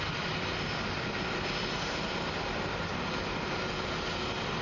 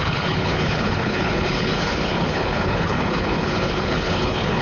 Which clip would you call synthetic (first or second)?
second